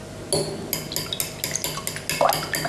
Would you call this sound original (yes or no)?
yes